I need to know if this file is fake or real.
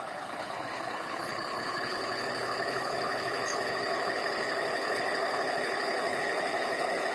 fake